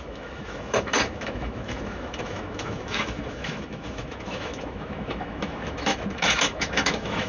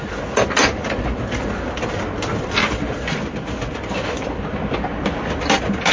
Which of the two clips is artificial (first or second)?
first